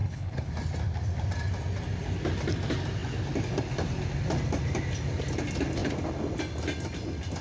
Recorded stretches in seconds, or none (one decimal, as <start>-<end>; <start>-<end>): 0.5-7.4